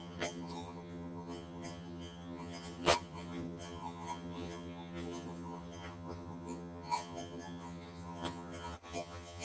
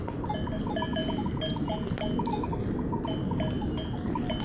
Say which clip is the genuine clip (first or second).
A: second